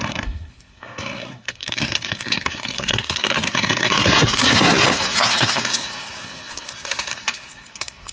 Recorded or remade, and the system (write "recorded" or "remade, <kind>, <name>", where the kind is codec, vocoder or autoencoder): remade, codec, SNAC